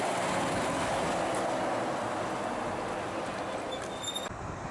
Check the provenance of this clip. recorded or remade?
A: recorded